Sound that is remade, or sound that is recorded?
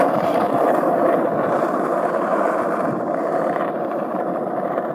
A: remade